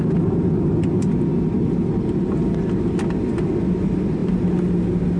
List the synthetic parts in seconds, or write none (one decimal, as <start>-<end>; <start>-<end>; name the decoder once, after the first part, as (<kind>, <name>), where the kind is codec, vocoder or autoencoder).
none